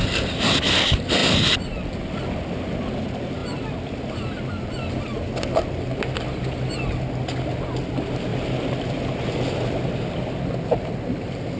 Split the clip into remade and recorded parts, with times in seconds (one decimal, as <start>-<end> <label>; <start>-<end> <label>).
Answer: 0.0-3.4 recorded; 3.4-4.7 remade; 4.7-8.3 recorded; 8.3-10.5 remade; 10.5-11.6 recorded